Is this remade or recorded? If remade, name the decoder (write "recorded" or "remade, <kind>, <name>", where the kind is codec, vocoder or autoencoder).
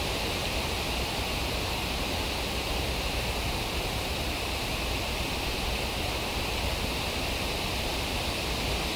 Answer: recorded